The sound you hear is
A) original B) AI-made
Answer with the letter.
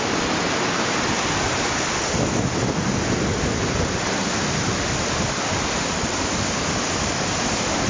A